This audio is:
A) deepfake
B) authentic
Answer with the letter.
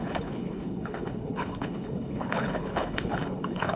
A